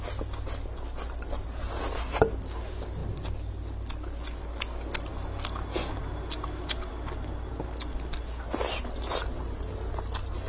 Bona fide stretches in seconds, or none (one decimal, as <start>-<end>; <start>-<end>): 0.0-10.5